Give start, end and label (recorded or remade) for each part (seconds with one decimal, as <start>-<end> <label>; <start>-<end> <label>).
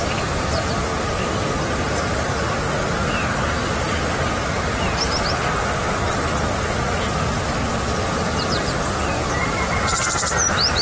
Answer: 0.0-0.9 remade; 0.9-3.6 recorded; 3.6-4.2 remade; 4.2-8.5 recorded; 8.5-10.8 remade